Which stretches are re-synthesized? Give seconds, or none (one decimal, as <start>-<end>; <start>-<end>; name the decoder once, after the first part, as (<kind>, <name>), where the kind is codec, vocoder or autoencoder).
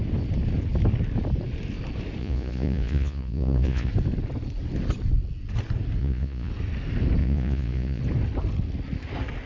2.2-3.9 (vocoder, Vocos); 6.0-6.5; 7.2-8.0